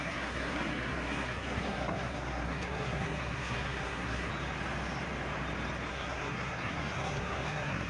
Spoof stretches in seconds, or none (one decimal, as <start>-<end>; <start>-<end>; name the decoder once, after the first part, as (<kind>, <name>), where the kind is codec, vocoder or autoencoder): 0.0-4.3 (codec, SNAC); 5.9-7.9